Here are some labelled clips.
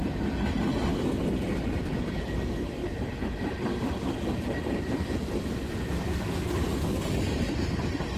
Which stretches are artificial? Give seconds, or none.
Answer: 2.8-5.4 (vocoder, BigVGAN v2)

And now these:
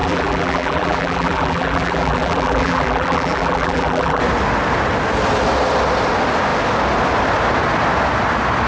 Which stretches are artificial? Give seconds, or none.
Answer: 0.0-4.2 (vocoder, BigVGAN v2)